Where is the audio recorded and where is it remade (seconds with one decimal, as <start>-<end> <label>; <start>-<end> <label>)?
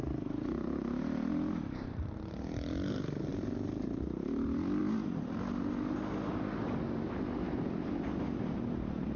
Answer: 0.0-3.3 recorded; 3.3-4.8 remade; 4.8-9.2 recorded